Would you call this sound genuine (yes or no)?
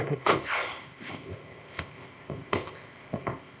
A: no